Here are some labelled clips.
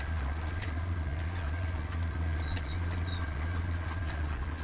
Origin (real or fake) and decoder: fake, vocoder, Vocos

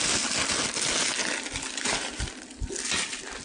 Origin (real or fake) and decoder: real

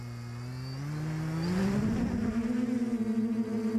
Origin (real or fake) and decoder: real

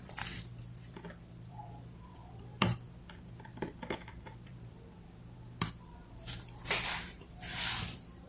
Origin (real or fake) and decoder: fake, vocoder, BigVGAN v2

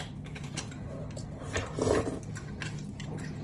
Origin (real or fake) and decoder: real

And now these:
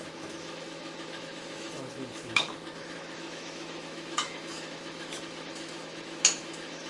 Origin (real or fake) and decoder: fake, autoencoder, DAC-VAE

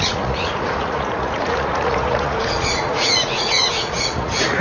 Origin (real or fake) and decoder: fake, vocoder, Vocos